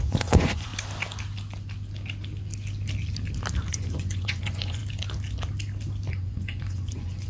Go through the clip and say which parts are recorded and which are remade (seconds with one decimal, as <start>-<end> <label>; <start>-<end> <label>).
0.0-0.7 remade; 0.7-3.7 recorded; 3.7-4.8 remade; 4.8-6.1 recorded; 6.1-7.3 remade